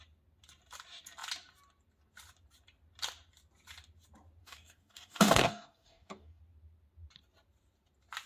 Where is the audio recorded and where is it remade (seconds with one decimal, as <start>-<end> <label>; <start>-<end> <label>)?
0.0-4.4 recorded; 4.4-6.4 remade; 6.4-8.3 recorded